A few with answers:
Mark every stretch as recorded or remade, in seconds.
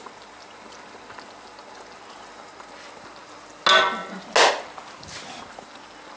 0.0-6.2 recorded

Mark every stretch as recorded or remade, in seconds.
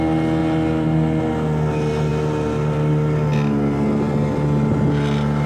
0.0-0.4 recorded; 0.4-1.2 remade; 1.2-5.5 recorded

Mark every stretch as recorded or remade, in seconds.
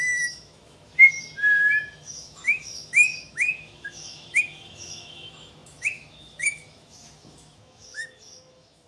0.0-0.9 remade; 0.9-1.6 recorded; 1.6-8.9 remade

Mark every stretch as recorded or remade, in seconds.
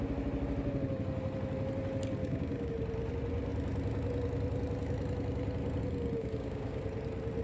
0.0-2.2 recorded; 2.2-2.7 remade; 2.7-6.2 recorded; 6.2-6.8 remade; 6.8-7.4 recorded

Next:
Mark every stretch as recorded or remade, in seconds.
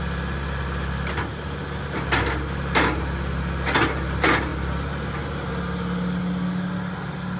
0.0-7.4 recorded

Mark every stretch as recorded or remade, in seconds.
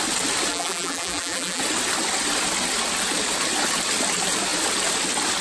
0.0-0.5 recorded; 0.5-1.6 remade; 1.6-5.4 recorded